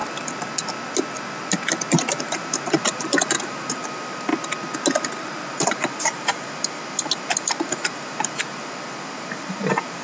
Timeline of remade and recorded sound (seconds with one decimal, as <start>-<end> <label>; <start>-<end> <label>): 0.0-2.2 recorded; 2.2-4.3 remade; 4.3-5.5 recorded; 5.5-10.0 remade